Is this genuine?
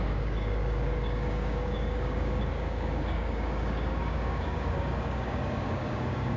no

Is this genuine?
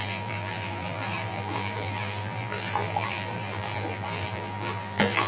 no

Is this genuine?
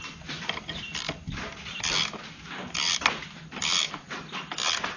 yes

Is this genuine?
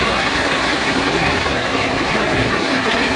no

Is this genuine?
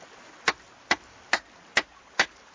yes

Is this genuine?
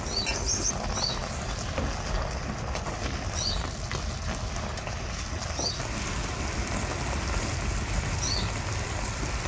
yes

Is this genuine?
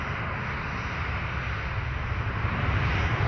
yes